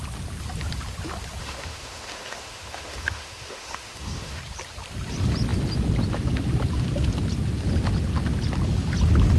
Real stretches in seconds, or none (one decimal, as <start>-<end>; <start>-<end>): 0.0-1.4; 4.4-9.4